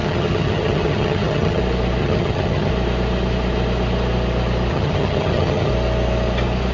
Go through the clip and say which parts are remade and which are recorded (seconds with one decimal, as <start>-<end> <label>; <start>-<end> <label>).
0.0-1.6 remade; 1.6-2.0 recorded; 2.0-2.7 remade; 2.7-4.7 recorded; 4.7-5.7 remade; 5.7-6.7 recorded